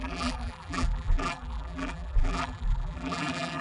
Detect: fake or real fake